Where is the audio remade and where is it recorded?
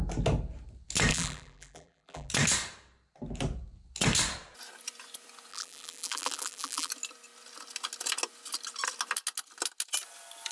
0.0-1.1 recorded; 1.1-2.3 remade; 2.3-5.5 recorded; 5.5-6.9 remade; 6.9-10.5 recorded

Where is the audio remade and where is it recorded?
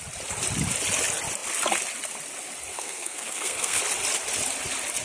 0.0-2.7 recorded; 2.7-3.8 remade; 3.8-5.0 recorded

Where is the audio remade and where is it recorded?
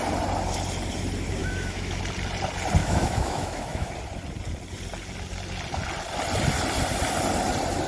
0.0-1.4 recorded; 1.4-2.0 remade; 2.0-2.8 recorded; 2.8-3.9 remade; 3.9-7.9 recorded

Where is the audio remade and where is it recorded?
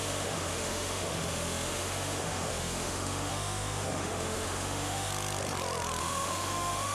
0.0-5.1 remade; 5.1-6.0 recorded; 6.0-6.9 remade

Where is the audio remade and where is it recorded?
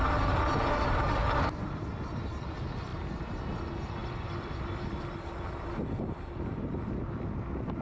0.0-1.2 recorded; 1.2-1.9 remade; 1.9-2.9 recorded; 2.9-3.4 remade; 3.4-4.0 recorded; 4.0-6.7 remade; 6.7-7.8 recorded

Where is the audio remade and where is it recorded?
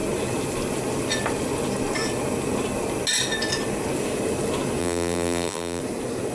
0.0-4.8 recorded; 4.8-5.8 remade; 5.8-6.3 recorded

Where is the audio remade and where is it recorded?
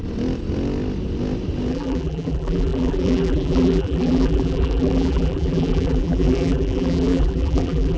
0.0-1.7 recorded; 1.7-8.0 remade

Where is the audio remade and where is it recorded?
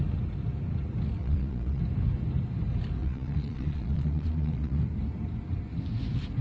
0.0-1.2 recorded; 1.2-1.8 remade; 1.8-3.0 recorded; 3.0-4.8 remade; 4.8-6.4 recorded